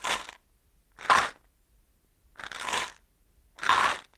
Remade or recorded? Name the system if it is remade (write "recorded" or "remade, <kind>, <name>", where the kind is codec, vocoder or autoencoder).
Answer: recorded